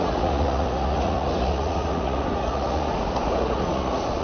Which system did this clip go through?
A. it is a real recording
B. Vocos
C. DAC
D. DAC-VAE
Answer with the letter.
B